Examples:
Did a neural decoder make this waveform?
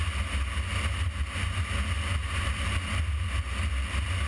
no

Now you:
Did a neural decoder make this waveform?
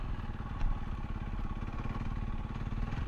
no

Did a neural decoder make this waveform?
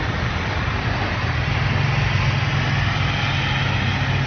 no